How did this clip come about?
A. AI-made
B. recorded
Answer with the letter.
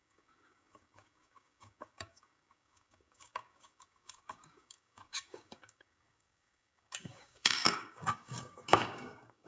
A